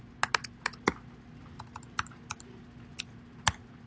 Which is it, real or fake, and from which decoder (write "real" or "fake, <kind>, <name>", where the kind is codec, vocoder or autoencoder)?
real